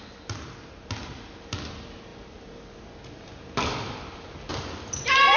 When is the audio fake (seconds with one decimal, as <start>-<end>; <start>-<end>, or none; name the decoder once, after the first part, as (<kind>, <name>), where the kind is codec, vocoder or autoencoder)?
none